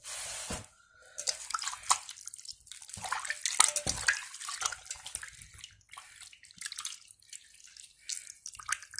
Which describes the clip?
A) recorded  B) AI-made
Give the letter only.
A